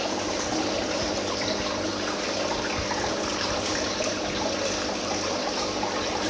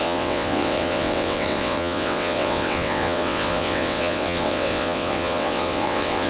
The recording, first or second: first